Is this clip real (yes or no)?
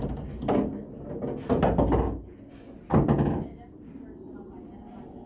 yes